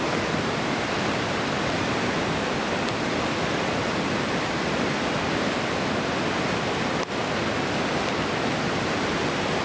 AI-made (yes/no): no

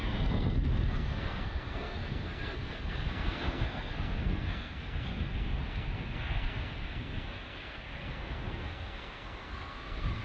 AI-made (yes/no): yes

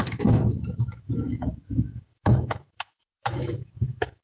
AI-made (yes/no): yes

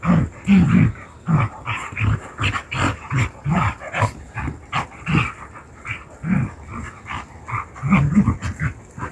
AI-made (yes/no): no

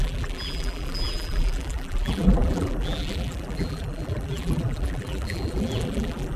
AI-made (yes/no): yes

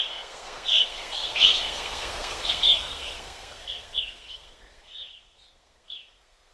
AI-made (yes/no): yes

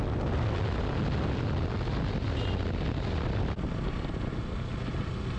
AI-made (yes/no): no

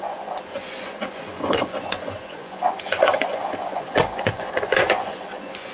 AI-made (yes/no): yes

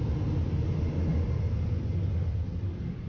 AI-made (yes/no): no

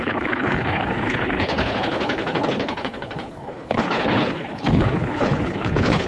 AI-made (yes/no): yes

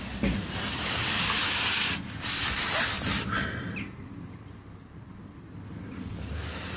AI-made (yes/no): no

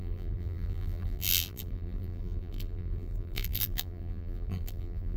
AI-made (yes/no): yes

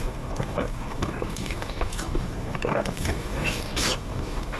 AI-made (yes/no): yes